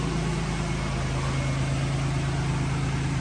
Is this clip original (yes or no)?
yes